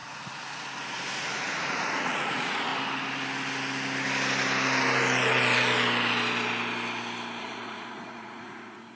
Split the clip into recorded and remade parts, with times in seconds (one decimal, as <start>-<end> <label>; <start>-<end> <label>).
0.0-1.9 recorded; 1.9-2.7 remade; 2.7-7.4 recorded; 7.4-9.0 remade